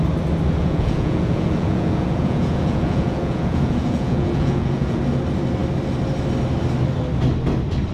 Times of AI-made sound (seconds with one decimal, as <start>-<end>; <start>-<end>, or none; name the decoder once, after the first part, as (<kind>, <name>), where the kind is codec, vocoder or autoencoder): 0.6-5.0 (vocoder, Vocos)